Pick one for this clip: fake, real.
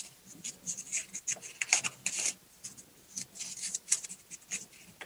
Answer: real